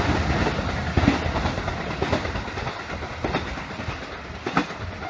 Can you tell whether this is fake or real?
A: real